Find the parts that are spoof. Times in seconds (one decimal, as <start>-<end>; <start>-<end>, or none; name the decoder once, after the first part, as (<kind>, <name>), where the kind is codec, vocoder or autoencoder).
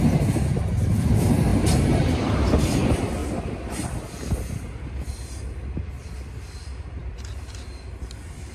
1.5-2.3 (vocoder, BigVGAN v2); 3.2-4.0; 7.0-8.5